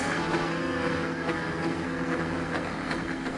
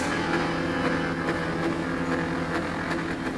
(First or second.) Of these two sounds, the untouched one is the second